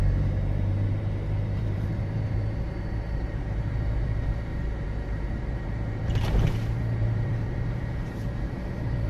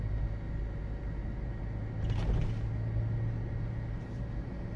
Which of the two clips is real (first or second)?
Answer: second